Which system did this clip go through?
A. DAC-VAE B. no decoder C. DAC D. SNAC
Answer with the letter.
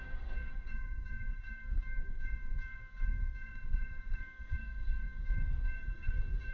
D